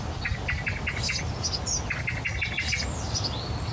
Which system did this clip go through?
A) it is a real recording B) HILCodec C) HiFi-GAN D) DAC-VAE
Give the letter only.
A